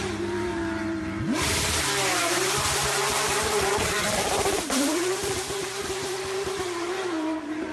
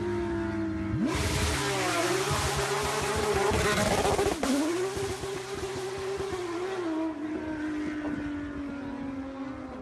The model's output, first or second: first